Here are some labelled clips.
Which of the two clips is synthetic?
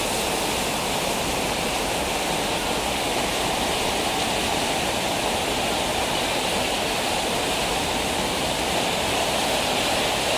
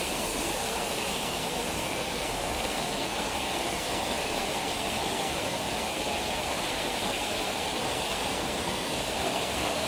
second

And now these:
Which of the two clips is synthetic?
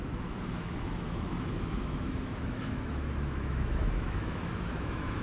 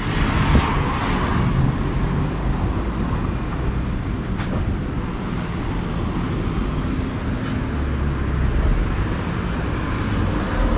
first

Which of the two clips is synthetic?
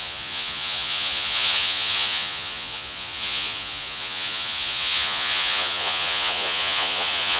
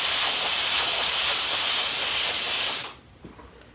first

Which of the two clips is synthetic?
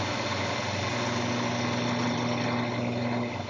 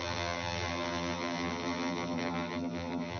second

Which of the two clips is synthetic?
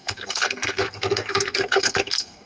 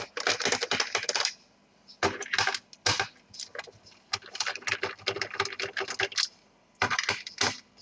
first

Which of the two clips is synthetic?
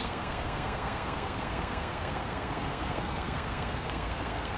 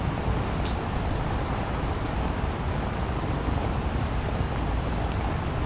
first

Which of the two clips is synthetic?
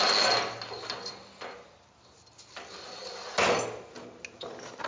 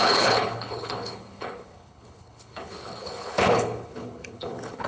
second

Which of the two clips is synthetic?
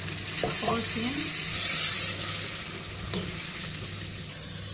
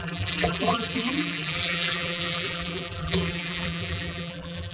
second